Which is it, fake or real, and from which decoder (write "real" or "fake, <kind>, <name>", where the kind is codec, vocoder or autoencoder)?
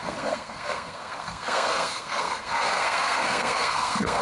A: fake, codec, SNAC